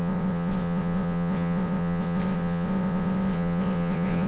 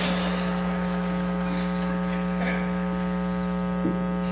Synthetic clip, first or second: first